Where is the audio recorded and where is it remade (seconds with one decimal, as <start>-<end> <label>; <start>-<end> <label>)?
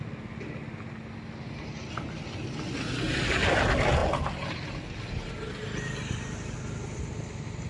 0.0-7.7 recorded